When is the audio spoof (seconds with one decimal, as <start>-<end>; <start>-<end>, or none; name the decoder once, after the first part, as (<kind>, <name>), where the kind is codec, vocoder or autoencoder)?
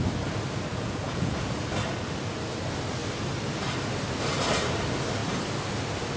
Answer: 0.7-1.6 (vocoder, Vocos)